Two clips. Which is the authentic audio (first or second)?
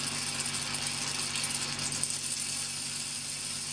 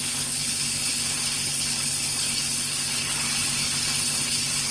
first